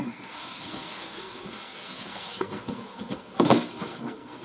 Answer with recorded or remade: remade